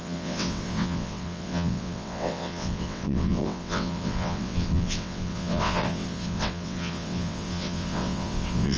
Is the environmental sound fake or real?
fake